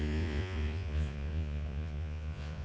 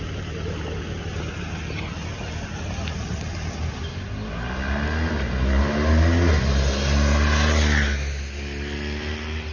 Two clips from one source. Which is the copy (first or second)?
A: first